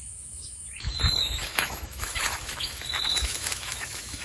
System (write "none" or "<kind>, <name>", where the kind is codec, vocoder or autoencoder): autoencoder, DAC-VAE